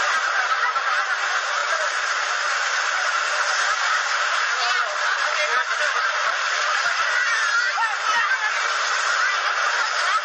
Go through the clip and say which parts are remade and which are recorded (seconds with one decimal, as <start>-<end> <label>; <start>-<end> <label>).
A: 0.0-1.6 recorded; 1.6-3.3 remade; 3.3-5.5 recorded; 5.5-7.4 remade; 7.4-10.2 recorded